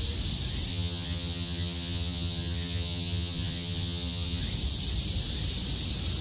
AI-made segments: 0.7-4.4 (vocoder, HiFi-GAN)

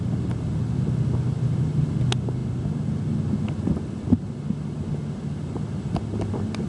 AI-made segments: none

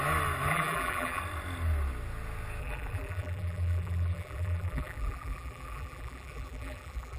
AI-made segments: 0.5-1.2 (vocoder, BigVGAN v2); 2.6-7.2

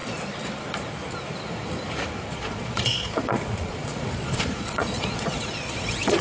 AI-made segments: 2.3-6.2 (vocoder, Vocos)

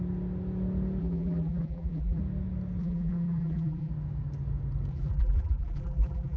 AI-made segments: 1.0-2.2 (vocoder, BigVGAN v2); 2.8-3.9; 4.9-6.4